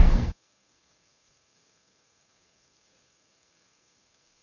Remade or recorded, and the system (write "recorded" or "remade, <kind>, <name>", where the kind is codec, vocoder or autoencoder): remade, codec, SNAC